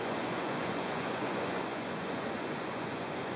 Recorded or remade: remade